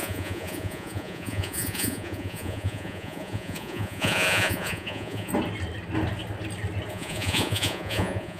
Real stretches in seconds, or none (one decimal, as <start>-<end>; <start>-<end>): 5.3-6.9